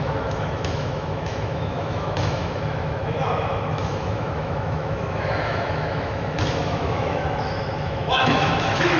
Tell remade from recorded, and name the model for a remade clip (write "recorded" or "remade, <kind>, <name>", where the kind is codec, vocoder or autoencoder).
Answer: remade, autoencoder, DAC-VAE